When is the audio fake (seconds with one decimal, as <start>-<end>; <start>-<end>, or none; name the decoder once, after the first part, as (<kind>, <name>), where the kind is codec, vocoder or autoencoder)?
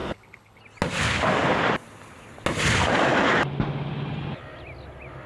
0.0-0.6 (codec, HILCodec)